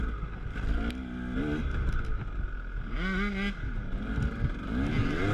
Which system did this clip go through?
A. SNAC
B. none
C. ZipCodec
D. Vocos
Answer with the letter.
B